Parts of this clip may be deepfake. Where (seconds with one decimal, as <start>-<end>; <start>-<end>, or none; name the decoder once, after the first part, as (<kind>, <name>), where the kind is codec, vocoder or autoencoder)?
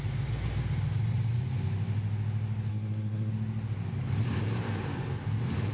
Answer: 2.7-3.3 (codec, SNAC)